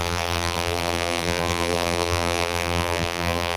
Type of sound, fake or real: fake